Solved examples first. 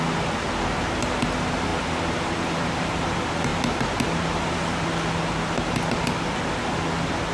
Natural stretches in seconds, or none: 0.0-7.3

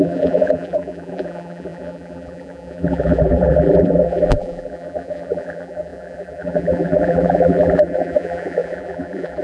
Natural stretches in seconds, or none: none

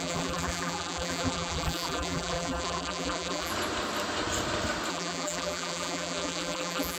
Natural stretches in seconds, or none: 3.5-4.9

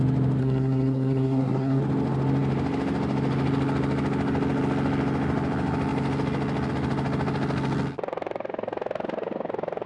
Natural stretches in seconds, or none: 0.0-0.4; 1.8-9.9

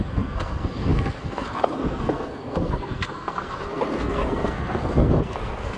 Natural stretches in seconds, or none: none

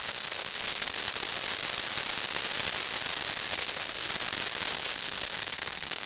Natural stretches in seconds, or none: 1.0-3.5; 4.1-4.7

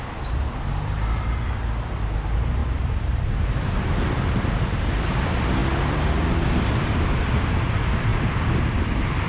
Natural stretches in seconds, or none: 5.6-6.7